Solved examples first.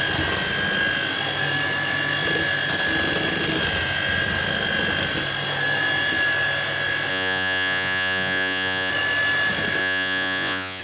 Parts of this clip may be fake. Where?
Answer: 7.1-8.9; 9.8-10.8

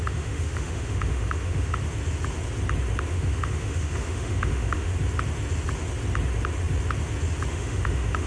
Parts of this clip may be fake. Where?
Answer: 0.0-1.8; 3.1-4.9; 7.5-8.3